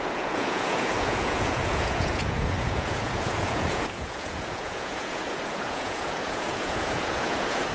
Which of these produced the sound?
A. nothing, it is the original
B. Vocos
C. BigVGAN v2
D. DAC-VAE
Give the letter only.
B